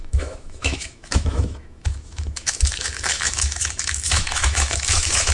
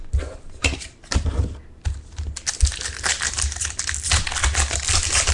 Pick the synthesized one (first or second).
first